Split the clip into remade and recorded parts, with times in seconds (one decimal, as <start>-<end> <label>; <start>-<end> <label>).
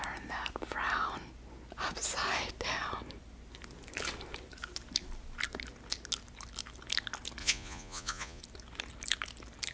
0.0-7.4 recorded; 7.4-8.4 remade; 8.4-9.7 recorded